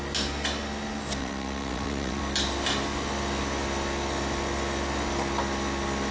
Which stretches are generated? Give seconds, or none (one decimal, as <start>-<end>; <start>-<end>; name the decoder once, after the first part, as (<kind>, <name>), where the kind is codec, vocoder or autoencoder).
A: 1.2-2.2 (vocoder, WaveNeXt)